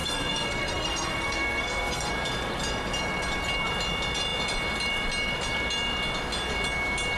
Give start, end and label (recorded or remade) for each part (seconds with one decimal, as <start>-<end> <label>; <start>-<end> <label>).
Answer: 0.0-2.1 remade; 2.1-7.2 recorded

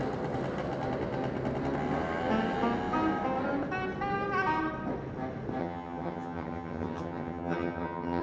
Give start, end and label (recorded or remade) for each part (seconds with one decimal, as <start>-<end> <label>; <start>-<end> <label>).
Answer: 0.0-5.6 recorded; 5.6-8.2 remade

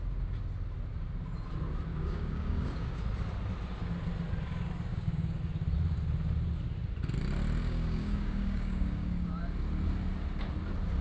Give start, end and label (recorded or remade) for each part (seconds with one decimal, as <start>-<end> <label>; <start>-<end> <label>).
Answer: 0.0-1.9 recorded; 1.9-3.0 remade; 3.0-4.9 recorded; 4.9-5.4 remade; 5.4-7.6 recorded; 7.6-9.4 remade; 9.4-11.0 recorded

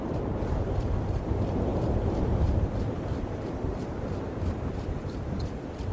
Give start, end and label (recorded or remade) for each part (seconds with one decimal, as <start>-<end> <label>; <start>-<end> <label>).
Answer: 0.0-5.9 remade